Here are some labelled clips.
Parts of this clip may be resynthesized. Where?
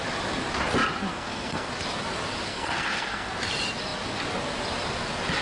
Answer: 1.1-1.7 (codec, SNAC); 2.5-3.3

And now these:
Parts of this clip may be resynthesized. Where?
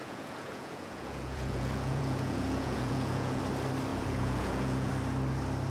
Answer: 0.0-3.4 (vocoder, Vocos); 3.9-4.9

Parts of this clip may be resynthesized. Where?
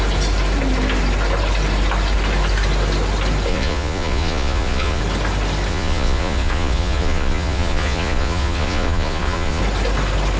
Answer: 3.5-5.0 (vocoder, Vocos); 5.7-9.6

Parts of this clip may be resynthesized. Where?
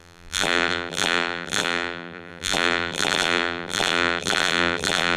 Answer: 0.0-5.2 (vocoder, BigVGAN v2)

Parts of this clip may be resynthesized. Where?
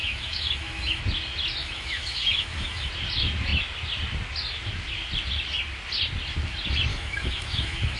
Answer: 0.0-1.0 (autoencoder, DAC-VAE); 1.6-2.9; 6.9-8.0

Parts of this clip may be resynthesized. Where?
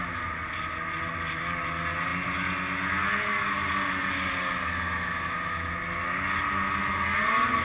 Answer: none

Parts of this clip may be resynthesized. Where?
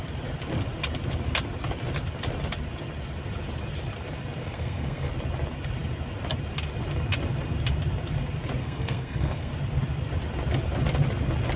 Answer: 4.4-5.1 (codec, SNAC); 8.6-9.5